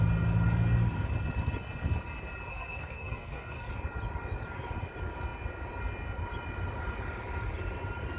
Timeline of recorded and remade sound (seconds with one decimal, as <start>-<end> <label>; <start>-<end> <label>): 0.0-2.5 recorded; 2.5-3.7 remade; 3.7-8.2 recorded